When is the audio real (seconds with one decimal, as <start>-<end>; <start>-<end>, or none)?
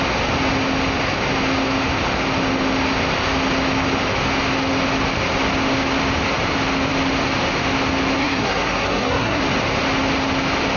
0.0-8.2; 9.4-10.8